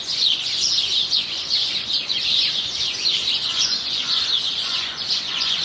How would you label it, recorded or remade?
remade